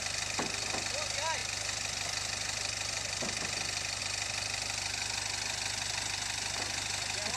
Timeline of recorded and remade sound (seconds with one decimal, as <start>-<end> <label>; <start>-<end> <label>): 0.0-7.4 recorded